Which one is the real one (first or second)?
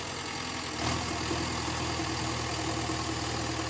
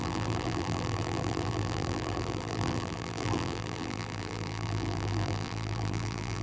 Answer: first